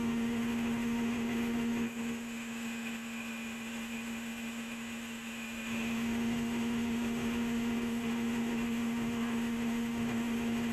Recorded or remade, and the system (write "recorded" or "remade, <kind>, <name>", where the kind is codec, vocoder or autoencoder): remade, autoencoder, DAC-VAE